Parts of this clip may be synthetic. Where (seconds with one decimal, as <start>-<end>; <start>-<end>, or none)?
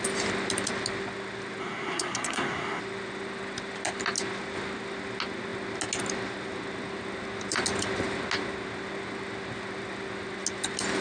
1.6-2.8